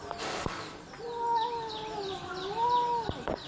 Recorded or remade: recorded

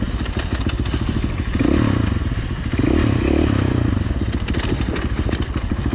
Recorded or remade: recorded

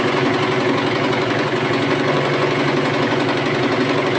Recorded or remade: remade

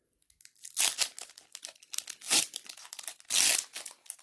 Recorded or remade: recorded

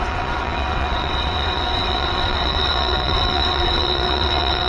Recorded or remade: remade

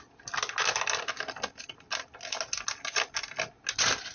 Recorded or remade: recorded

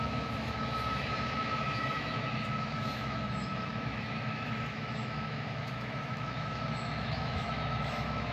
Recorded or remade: remade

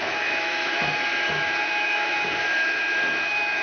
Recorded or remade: remade